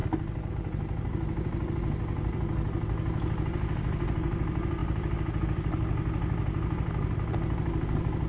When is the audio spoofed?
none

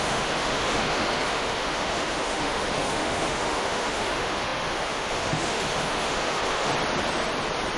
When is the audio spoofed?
0.0-6.7 (autoencoder, DAC-VAE)

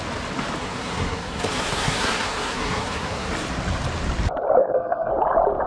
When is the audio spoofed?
0.6-3.3 (codec, SNAC); 4.6-5.1

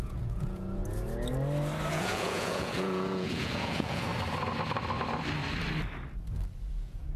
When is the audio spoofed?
0.0-0.8 (vocoder, Vocos); 1.9-4.1; 6.7-7.2